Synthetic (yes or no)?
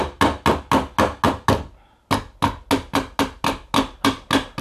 no